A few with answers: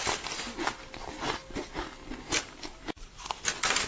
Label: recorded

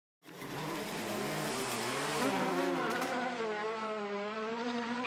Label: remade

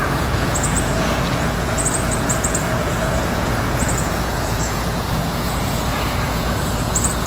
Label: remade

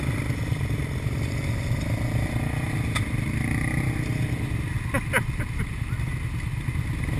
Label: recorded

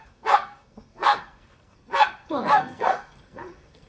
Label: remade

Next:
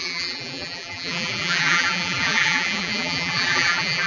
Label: remade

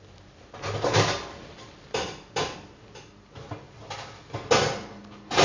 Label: recorded